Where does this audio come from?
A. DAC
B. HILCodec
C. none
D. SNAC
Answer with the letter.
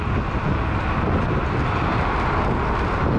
C